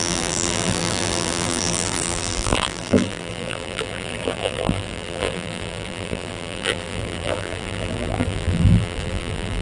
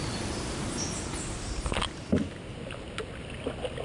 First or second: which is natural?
second